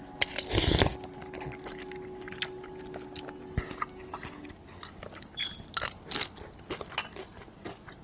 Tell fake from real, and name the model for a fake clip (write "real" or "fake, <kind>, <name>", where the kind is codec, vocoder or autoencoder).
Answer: real